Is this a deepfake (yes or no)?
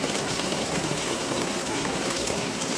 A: yes